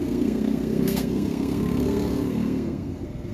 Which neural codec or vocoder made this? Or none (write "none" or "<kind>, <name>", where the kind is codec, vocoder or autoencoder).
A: codec, SNAC